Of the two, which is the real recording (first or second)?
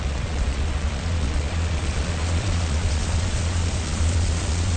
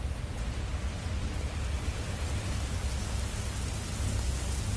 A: second